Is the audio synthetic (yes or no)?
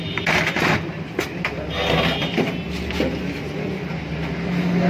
no